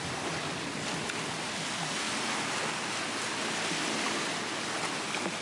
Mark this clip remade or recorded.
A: recorded